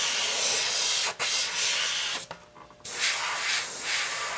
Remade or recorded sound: recorded